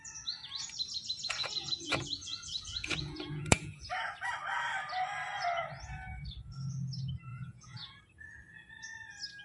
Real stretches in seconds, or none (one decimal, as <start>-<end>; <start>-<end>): 0.0-1.4; 3.8-7.3; 8.0-9.4